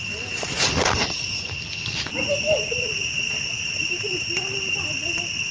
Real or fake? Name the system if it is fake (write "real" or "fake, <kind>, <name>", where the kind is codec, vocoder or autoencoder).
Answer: real